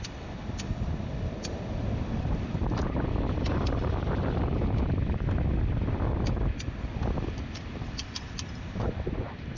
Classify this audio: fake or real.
real